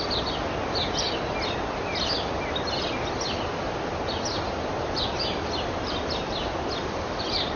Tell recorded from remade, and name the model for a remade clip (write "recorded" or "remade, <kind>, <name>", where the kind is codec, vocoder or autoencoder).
recorded